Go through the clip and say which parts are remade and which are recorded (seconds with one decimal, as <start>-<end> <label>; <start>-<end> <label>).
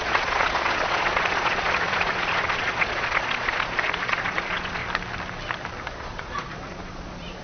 0.0-4.8 remade; 4.8-6.0 recorded; 6.0-7.4 remade